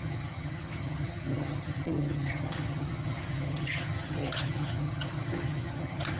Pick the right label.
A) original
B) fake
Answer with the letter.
B